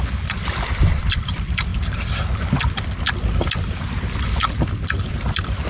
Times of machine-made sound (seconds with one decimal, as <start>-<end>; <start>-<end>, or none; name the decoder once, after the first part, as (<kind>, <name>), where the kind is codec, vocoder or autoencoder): none

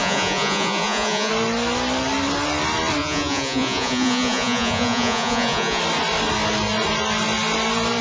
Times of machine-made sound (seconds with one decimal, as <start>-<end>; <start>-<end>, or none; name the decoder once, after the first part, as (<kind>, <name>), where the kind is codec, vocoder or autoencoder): 0.0-1.3 (vocoder, Vocos); 3.0-5.8